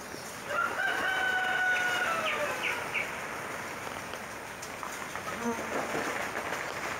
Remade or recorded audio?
recorded